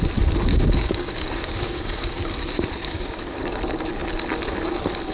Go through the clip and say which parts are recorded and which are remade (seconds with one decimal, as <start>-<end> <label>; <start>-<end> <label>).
0.0-0.5 recorded; 0.5-2.2 remade; 2.2-2.8 recorded; 2.8-3.6 remade; 3.6-5.1 recorded